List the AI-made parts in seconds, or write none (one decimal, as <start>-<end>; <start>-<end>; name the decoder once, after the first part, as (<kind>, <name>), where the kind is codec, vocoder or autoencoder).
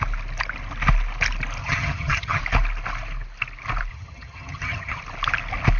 1.6-2.4 (vocoder, HiFi-GAN); 3.9-5.0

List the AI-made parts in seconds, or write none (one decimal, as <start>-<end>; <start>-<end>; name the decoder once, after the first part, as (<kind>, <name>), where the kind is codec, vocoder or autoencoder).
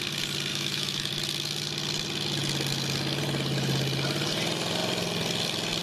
0.5-1.1 (autoencoder, DAC-VAE)